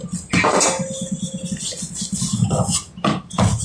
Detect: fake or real real